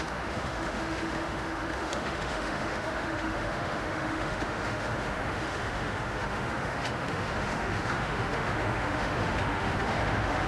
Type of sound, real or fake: fake